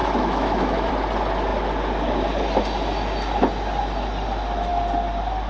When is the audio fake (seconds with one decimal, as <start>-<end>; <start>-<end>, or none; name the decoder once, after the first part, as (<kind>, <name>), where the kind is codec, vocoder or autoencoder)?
0.0-0.9 (autoencoder, DAC-VAE)